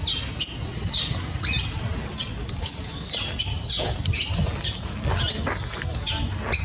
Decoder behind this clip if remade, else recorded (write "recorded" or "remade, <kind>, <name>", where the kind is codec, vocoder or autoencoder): recorded